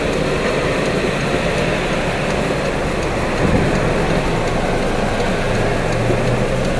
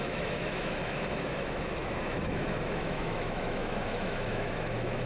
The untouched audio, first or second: first